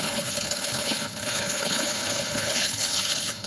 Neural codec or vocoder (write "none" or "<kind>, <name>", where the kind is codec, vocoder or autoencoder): codec, HILCodec